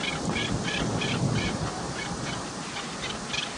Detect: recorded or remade recorded